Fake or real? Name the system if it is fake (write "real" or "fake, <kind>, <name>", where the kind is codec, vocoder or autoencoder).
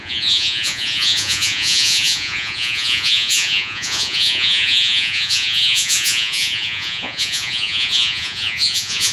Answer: fake, vocoder, Vocos